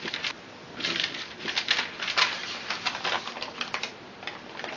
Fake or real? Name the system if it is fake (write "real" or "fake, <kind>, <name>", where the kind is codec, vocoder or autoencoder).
real